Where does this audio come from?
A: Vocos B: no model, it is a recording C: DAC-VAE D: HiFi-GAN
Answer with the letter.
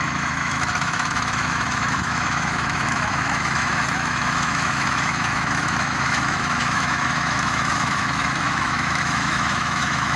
C